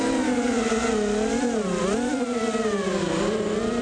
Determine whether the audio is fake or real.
real